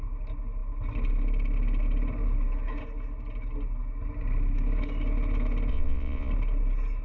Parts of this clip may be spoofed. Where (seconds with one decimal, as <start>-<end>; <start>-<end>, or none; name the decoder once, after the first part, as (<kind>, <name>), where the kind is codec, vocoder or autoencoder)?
5.7-6.3 (vocoder, Vocos)